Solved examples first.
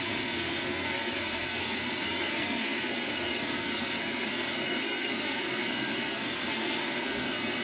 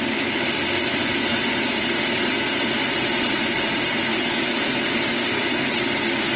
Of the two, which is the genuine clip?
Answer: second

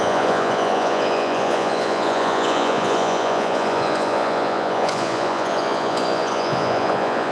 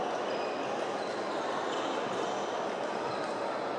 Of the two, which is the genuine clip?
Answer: second